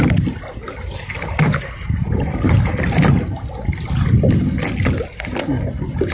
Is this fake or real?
real